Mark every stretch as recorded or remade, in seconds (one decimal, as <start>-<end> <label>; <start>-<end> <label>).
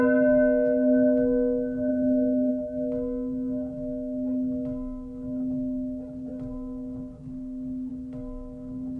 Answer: 0.0-1.9 recorded; 1.9-2.5 remade; 2.5-9.0 recorded